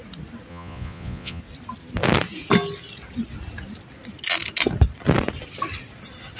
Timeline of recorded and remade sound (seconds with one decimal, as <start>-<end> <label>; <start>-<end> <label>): 0.0-0.5 recorded; 0.5-1.4 remade; 1.4-6.4 recorded